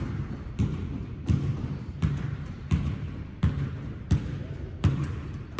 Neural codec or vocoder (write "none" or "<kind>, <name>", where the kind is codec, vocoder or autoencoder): vocoder, BigVGAN v2